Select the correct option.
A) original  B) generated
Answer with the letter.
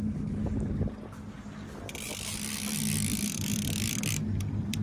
A